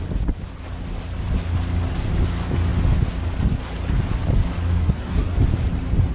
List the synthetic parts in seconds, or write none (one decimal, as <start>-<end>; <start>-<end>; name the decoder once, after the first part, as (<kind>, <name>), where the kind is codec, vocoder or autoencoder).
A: 4.8-5.3 (codec, SNAC)